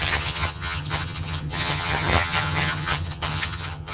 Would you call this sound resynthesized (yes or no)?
yes